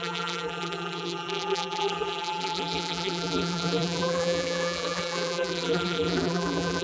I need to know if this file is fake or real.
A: fake